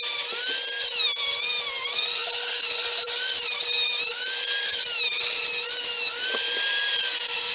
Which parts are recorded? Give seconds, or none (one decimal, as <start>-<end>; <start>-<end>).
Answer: 0.0-7.5